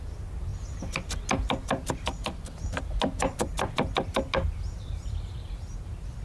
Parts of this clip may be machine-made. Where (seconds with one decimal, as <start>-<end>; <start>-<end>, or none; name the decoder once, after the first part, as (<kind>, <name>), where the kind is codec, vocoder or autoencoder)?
0.5-1.1 (vocoder, BigVGAN v2); 3.2-3.9

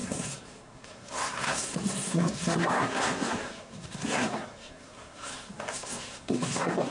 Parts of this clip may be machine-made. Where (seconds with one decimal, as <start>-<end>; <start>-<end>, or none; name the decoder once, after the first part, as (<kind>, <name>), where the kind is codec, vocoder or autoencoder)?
0.0-6.9 (codec, SNAC)

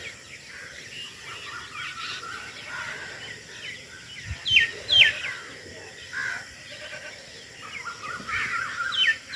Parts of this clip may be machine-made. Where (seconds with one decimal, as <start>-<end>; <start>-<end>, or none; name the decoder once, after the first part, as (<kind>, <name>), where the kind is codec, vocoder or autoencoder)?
none

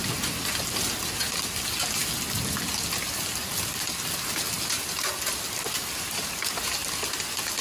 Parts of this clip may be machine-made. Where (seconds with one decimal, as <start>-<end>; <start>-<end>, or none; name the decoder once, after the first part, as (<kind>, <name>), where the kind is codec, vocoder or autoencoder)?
none